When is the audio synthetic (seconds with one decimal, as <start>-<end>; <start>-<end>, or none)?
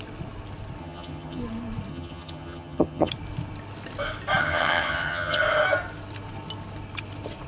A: 0.8-1.4; 1.9-3.1; 4.4-5.4